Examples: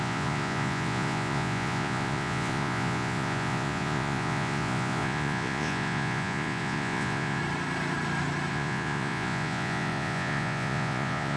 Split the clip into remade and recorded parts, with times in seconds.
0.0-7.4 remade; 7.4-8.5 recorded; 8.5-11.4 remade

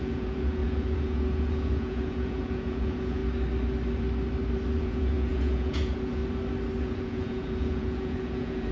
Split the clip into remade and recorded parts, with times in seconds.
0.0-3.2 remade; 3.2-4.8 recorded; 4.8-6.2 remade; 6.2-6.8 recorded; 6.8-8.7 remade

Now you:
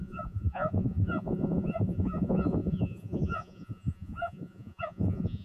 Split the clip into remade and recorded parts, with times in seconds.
0.0-5.4 remade